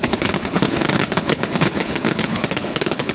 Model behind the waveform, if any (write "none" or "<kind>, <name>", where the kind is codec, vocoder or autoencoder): codec, HILCodec